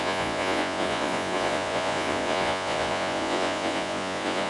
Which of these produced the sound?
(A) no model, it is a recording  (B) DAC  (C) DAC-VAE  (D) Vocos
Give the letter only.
D